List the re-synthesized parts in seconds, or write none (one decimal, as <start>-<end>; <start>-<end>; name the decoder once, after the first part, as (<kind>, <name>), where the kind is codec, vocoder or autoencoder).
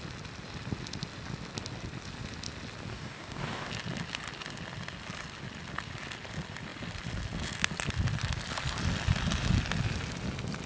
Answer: 2.9-3.7 (codec, DAC)